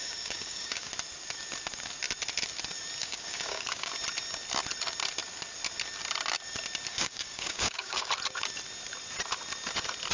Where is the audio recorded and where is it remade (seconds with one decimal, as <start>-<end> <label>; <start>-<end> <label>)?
0.0-0.9 remade; 0.9-3.0 recorded; 3.0-3.9 remade; 3.9-6.9 recorded; 6.9-8.1 remade; 8.1-10.1 recorded